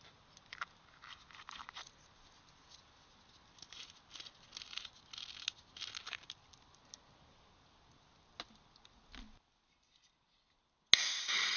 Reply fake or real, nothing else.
real